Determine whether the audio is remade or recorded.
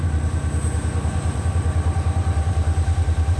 remade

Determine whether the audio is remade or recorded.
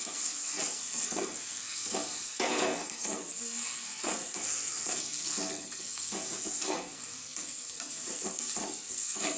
remade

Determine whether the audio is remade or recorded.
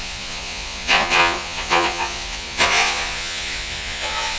remade